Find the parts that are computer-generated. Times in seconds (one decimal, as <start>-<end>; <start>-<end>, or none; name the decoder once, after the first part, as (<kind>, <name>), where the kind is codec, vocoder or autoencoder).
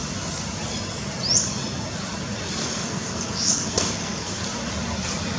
2.6-4.4 (codec, SNAC)